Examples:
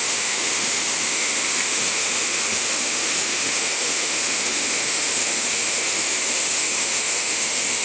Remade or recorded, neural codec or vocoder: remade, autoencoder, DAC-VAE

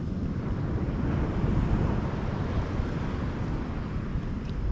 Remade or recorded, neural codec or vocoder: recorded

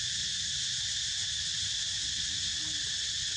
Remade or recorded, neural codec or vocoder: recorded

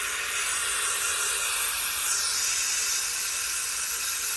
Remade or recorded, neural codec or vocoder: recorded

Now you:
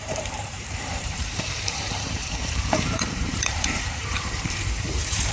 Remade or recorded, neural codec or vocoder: remade, vocoder, BigVGAN v2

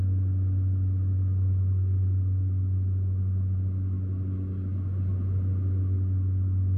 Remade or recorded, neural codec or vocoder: recorded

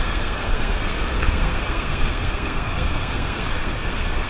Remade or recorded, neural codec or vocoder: remade, codec, SNAC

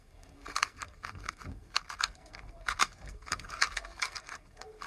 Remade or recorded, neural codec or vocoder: remade, codec, SNAC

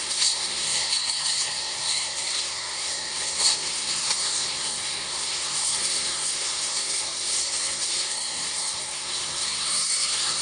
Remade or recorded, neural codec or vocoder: remade, codec, SNAC